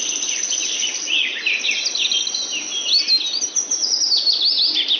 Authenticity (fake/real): real